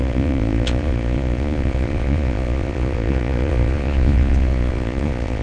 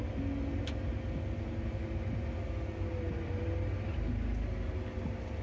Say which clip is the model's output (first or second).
first